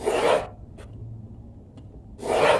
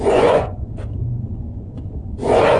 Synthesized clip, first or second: second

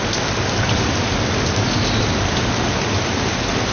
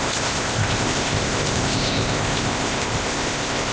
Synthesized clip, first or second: second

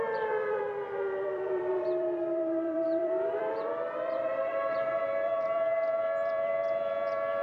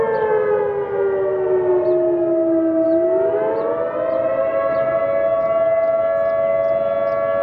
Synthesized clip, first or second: first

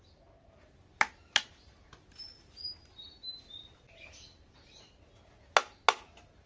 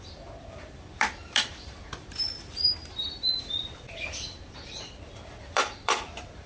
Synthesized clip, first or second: second